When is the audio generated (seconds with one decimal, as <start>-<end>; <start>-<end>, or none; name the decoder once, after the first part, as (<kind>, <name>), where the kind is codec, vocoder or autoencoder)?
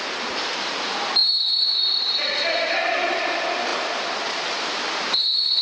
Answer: 0.0-5.6 (vocoder, BigVGAN v2)